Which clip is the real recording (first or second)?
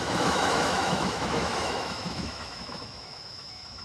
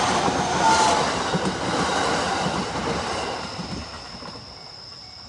second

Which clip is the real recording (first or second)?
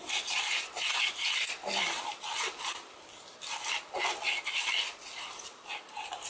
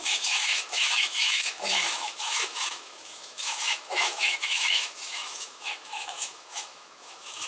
first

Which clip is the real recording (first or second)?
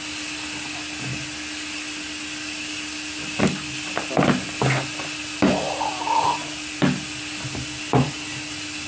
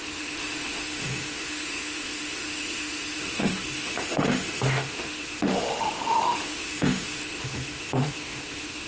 first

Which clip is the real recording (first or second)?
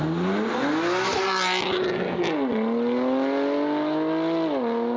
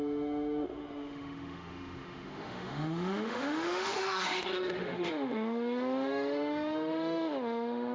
first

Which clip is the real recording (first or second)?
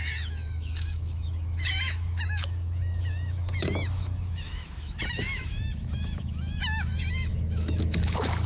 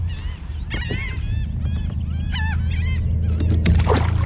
second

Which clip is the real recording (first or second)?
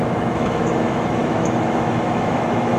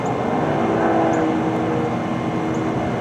second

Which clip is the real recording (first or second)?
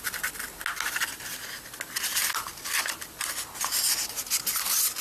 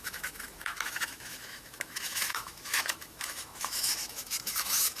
first